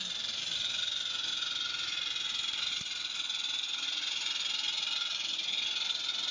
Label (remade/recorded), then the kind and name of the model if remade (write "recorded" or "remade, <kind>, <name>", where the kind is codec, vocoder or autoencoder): recorded